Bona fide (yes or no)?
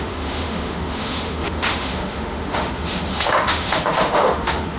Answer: no